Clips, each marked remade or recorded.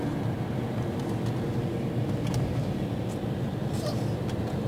recorded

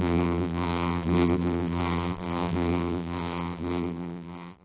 remade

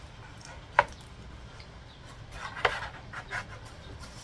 recorded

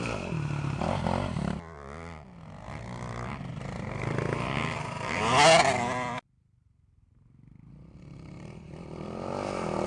recorded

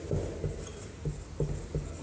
recorded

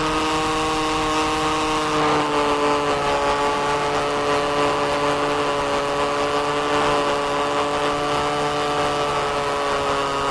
recorded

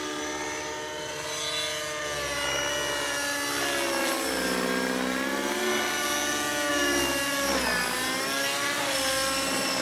recorded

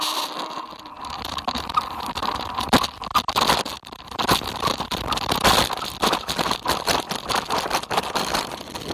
remade